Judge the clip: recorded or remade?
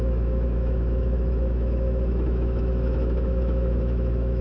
remade